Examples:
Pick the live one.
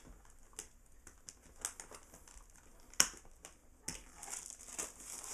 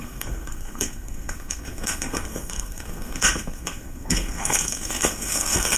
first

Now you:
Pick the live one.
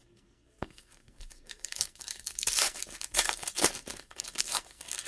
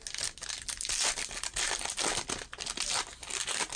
second